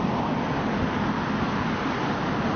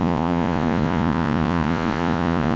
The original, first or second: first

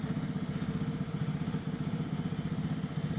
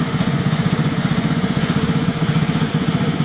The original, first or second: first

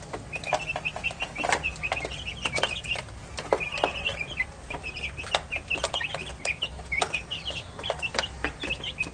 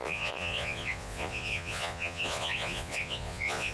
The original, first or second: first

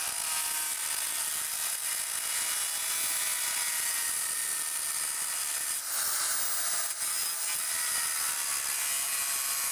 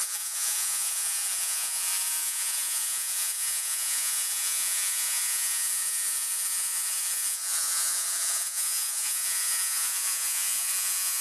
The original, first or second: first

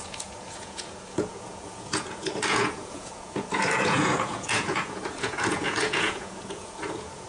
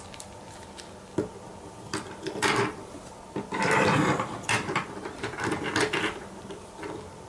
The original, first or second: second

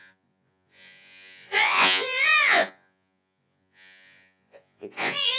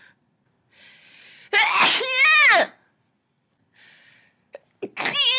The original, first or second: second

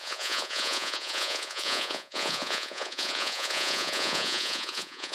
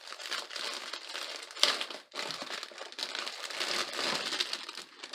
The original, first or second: second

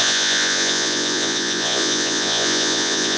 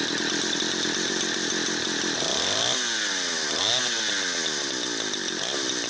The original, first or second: second